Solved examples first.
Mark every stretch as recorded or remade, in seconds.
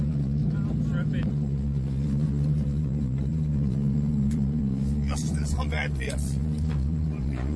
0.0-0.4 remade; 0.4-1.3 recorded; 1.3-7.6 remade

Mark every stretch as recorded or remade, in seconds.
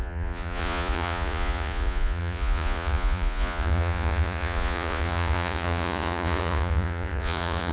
0.0-7.7 remade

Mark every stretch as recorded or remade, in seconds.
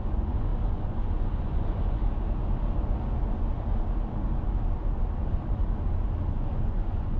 0.0-2.0 remade; 2.0-6.3 recorded; 6.3-7.2 remade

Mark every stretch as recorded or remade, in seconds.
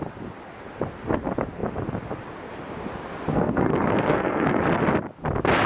0.0-3.3 recorded; 3.3-4.6 remade; 4.6-5.7 recorded